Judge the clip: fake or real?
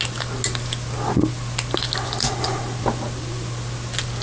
real